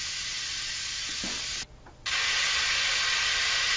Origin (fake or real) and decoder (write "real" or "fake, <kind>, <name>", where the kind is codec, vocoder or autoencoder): real